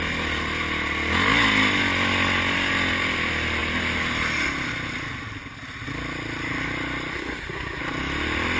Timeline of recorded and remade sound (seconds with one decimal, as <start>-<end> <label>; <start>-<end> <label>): 0.0-7.1 recorded; 7.1-7.8 remade; 7.8-8.6 recorded